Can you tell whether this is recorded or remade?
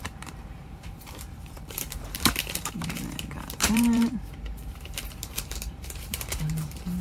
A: remade